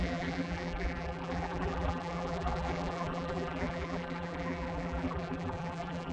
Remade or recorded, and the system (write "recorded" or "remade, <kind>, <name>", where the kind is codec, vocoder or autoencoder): remade, vocoder, BigVGAN v2